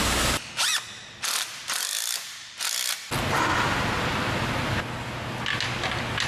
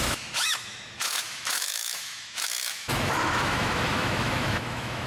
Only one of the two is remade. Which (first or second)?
second